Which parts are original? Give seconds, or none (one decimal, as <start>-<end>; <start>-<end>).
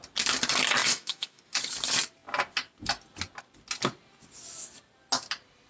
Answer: 0.0-0.8; 1.4-5.7